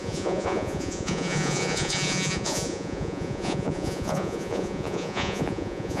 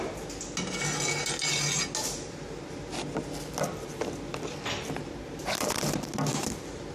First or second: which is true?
second